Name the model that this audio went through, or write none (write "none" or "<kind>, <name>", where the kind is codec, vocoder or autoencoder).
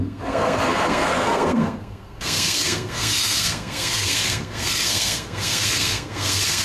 codec, SNAC